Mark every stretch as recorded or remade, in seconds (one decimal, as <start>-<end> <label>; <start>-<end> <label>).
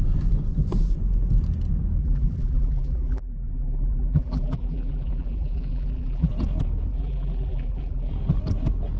0.0-2.0 recorded; 2.0-6.3 remade; 6.3-6.9 recorded; 6.9-8.1 remade; 8.1-9.0 recorded